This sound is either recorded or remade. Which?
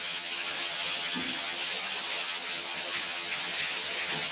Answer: remade